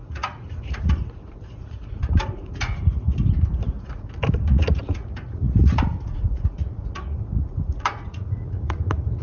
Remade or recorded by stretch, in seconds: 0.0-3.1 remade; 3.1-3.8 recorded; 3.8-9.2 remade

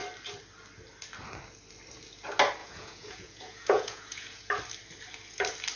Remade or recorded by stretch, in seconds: 0.0-2.6 recorded; 2.6-4.5 remade; 4.5-5.8 recorded

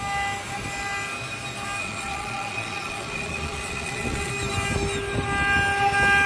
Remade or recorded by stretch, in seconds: 0.0-1.8 recorded; 1.8-4.3 remade; 4.3-6.3 recorded

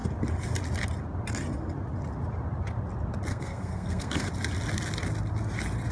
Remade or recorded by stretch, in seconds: 0.0-3.3 recorded; 3.3-4.3 remade; 4.3-5.9 recorded

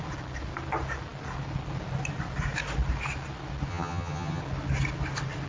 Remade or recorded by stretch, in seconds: 0.0-3.7 recorded; 3.7-4.4 remade; 4.4-5.5 recorded